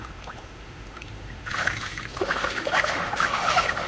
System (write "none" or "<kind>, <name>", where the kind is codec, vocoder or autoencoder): autoencoder, DAC-VAE